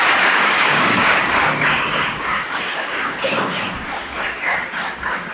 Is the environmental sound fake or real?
fake